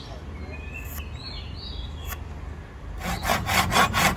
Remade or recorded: recorded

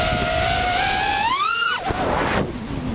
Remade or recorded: recorded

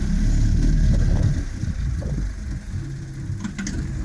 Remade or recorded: recorded